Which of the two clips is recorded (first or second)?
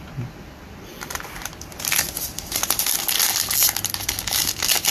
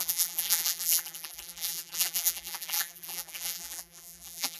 first